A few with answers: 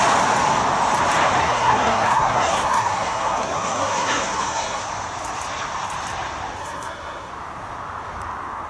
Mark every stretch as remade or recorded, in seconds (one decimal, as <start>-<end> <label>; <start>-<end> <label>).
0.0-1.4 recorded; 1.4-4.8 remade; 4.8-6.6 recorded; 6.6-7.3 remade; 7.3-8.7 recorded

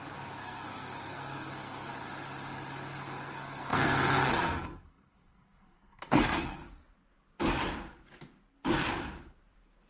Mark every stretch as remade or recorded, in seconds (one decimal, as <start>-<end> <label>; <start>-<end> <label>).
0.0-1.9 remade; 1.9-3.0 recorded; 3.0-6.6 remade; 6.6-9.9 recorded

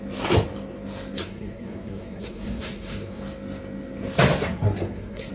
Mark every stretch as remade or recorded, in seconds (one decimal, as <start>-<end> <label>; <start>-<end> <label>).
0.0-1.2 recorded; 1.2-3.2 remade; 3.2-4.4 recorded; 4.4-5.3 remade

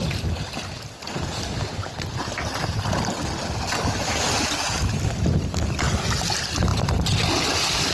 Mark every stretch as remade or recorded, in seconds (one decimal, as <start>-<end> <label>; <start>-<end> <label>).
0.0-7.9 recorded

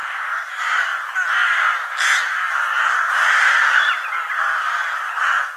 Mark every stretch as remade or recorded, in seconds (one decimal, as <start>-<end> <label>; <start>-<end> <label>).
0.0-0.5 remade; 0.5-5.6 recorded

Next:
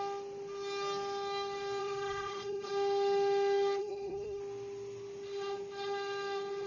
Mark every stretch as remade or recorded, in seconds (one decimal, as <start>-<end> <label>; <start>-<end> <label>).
0.0-1.8 recorded; 1.8-2.7 remade; 2.7-3.8 recorded; 3.8-4.4 remade; 4.4-6.7 recorded